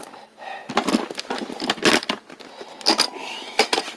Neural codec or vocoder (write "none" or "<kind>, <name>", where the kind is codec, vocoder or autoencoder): none